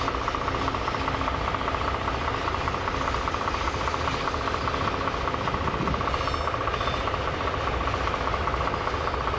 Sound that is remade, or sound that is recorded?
recorded